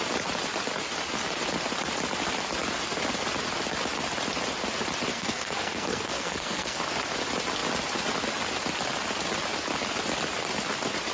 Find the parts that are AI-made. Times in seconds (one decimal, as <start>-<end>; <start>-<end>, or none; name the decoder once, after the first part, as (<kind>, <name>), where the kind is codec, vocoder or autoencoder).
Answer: 5.1-6.8 (codec, SNAC)